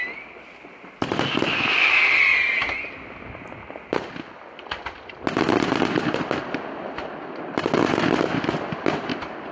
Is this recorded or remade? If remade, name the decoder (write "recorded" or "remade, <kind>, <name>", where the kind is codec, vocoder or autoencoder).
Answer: recorded